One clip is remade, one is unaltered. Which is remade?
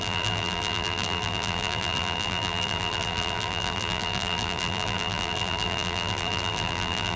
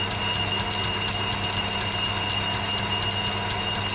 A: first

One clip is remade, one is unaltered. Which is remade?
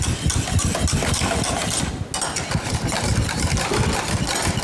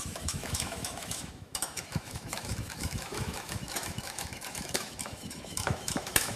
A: second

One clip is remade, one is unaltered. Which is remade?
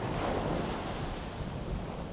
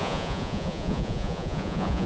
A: second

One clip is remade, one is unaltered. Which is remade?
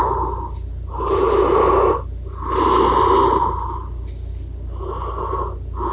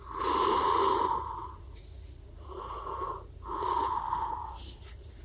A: second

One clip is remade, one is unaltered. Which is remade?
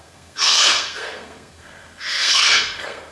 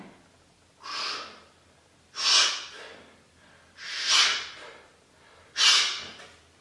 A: first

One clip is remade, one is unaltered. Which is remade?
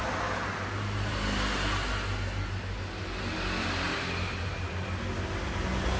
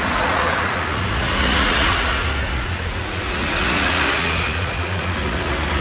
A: second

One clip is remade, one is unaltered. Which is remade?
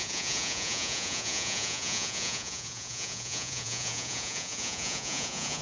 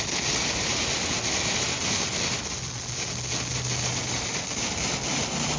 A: first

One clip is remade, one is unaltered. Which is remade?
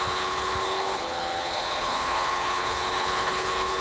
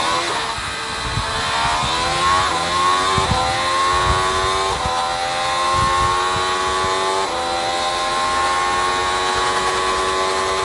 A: first